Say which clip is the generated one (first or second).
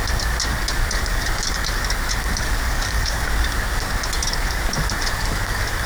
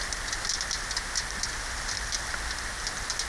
first